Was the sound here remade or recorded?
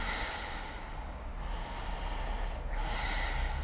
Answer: recorded